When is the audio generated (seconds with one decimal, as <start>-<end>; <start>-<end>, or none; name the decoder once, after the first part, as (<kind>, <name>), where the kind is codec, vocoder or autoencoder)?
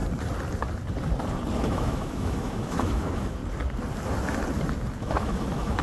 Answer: 1.6-3.4 (autoencoder, DAC-VAE); 5.0-5.8